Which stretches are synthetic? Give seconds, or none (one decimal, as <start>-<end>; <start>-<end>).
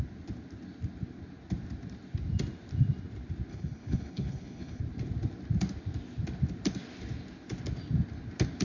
3.5-4.8